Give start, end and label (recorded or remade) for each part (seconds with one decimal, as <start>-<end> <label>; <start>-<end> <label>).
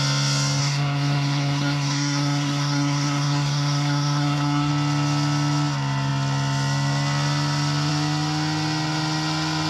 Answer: 0.0-0.6 recorded; 0.6-4.7 remade; 4.7-9.7 recorded